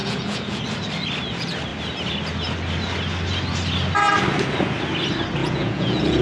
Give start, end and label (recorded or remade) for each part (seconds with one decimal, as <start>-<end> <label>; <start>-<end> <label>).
0.0-0.6 remade; 0.6-5.4 recorded; 5.4-6.2 remade